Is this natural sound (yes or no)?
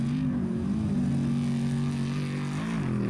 yes